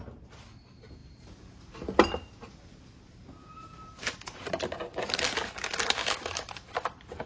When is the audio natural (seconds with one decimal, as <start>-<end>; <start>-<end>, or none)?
0.0-6.0; 6.7-7.3